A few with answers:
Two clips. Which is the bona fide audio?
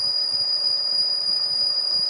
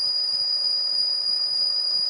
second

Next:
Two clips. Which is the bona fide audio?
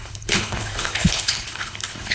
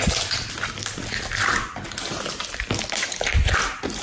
second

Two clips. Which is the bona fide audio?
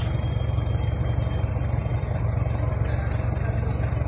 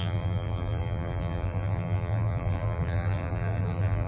first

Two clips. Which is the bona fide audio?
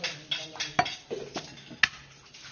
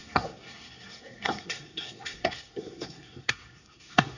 first